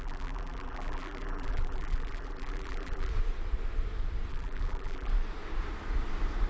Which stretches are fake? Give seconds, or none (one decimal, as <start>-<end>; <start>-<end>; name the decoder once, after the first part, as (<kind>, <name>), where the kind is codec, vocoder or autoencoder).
0.0-3.1 (vocoder, BigVGAN v2); 4.3-5.1